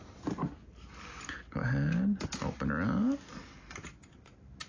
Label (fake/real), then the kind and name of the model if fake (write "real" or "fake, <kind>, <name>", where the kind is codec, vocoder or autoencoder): real